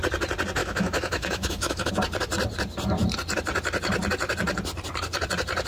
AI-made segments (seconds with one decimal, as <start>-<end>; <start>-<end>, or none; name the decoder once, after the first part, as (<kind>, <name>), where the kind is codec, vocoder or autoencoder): 0.6-1.9 (autoencoder, DAC-VAE)